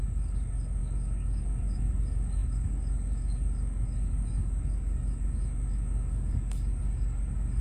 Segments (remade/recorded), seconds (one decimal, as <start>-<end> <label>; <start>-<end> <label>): 0.0-7.6 remade